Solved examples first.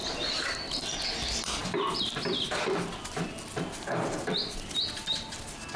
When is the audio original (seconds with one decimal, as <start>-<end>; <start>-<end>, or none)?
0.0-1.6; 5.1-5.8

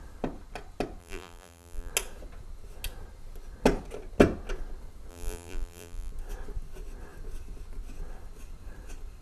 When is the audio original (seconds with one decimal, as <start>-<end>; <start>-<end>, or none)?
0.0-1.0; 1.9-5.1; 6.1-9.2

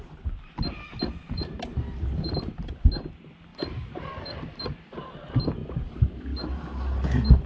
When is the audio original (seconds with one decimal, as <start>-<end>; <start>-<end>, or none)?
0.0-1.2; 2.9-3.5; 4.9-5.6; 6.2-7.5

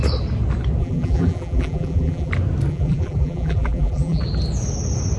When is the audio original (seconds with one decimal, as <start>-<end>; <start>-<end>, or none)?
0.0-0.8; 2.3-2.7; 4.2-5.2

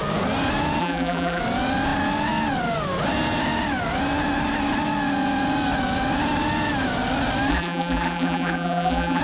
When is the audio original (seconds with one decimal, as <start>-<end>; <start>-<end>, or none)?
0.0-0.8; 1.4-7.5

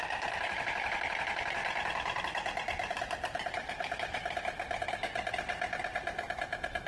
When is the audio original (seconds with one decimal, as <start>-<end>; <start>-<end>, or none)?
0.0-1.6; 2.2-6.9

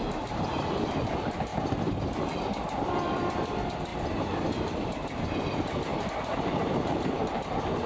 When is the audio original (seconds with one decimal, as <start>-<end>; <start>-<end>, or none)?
1.5-2.8; 3.9-5.4

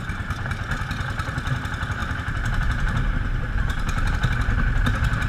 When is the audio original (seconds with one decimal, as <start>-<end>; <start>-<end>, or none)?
0.0-2.0; 4.1-5.3